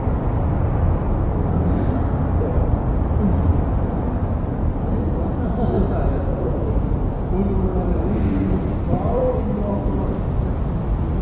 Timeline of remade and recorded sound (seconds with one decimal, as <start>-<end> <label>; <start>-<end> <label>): 0.0-3.5 recorded; 3.5-6.4 remade; 6.4-7.7 recorded; 7.7-9.2 remade; 9.2-11.2 recorded